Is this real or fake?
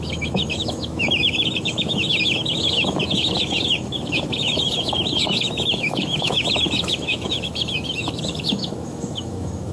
fake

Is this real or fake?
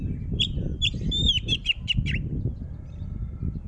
real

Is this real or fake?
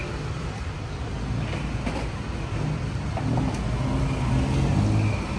real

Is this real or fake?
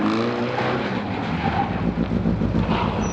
real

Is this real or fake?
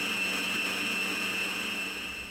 real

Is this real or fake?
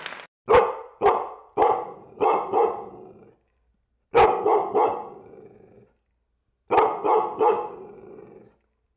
real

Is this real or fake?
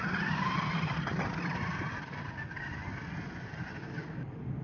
real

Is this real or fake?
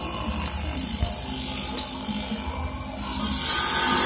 real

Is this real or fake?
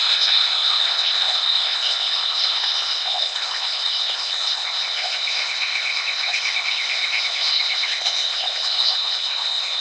fake